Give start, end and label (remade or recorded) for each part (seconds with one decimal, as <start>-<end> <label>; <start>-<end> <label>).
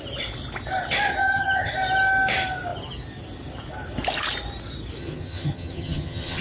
0.0-1.2 recorded; 1.2-1.7 remade; 1.7-5.0 recorded; 5.0-6.4 remade